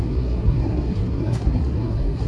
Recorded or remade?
remade